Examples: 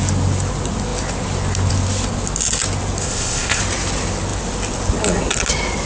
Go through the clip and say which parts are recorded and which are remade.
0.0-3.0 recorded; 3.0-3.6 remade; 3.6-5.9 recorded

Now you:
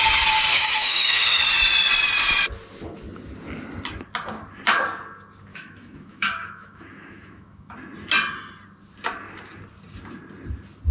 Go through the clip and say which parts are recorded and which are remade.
0.0-0.5 recorded; 0.5-1.4 remade; 1.4-5.5 recorded; 5.5-7.7 remade; 7.7-10.9 recorded

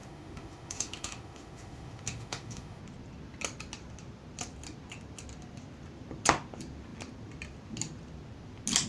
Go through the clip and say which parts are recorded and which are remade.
0.0-2.8 remade; 2.8-8.9 recorded

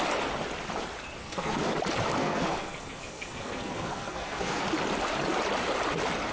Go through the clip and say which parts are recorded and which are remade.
0.0-1.2 recorded; 1.2-1.7 remade; 1.7-2.2 recorded; 2.2-4.6 remade; 4.6-6.3 recorded